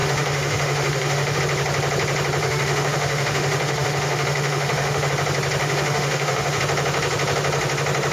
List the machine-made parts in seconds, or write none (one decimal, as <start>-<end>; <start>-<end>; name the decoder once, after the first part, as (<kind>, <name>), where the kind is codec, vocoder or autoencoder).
0.0-1.4 (autoencoder, DAC-VAE); 2.4-5.1; 5.6-6.6